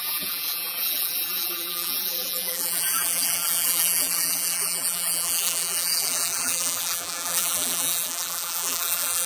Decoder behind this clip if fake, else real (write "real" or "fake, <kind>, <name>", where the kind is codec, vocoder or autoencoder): fake, vocoder, BigVGAN v2